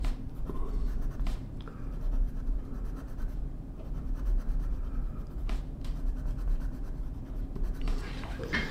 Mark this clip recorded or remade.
remade